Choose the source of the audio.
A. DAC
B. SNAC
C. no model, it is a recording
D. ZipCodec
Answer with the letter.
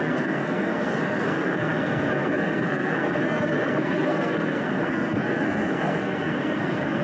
B